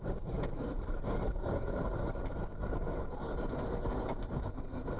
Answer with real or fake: fake